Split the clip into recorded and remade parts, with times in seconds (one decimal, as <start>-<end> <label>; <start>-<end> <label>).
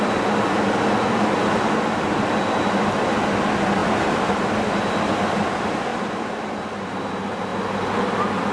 0.0-3.8 recorded; 3.8-4.4 remade; 4.4-5.9 recorded; 5.9-6.6 remade; 6.6-8.5 recorded